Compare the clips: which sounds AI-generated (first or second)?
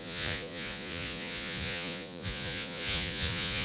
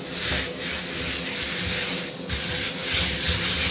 first